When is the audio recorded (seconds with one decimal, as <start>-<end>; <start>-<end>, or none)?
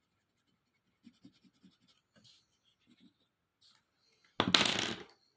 0.0-5.4